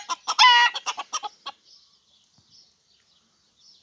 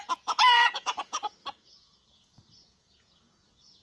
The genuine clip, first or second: first